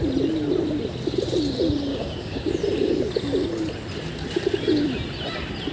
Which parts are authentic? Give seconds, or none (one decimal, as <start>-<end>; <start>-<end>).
0.0-1.9; 2.5-5.7